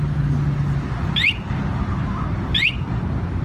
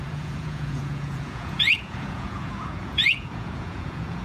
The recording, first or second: first